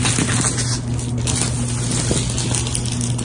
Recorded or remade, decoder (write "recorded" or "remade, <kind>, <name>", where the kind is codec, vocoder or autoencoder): recorded